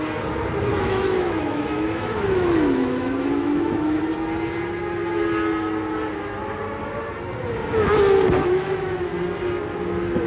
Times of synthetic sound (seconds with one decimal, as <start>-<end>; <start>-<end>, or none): 0.7-4.0; 8.4-9.1

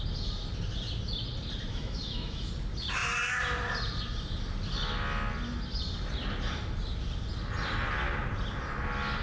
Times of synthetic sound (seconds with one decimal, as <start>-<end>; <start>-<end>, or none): 1.7-2.5

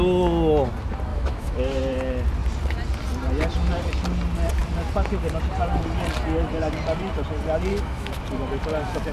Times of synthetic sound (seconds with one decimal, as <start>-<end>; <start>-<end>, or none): 1.1-1.8; 7.7-8.2

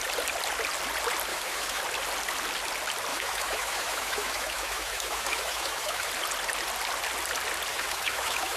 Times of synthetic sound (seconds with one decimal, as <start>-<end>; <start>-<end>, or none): 1.3-1.8; 3.1-6.1; 7.7-8.6

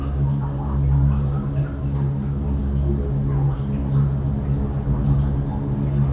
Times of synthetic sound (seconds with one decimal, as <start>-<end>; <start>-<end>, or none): none

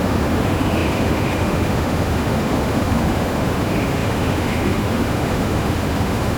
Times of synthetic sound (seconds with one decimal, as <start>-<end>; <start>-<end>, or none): 0.0-6.4

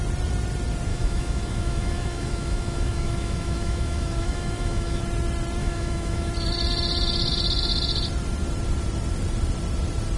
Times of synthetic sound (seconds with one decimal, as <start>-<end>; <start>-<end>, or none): 0.9-5.0; 5.6-6.3

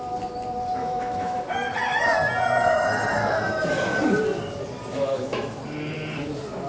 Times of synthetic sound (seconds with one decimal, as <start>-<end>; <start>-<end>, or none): 0.8-1.4; 4.9-5.6